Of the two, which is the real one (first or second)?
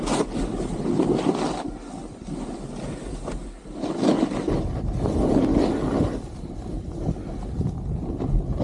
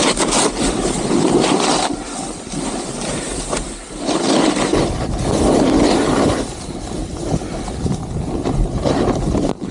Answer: first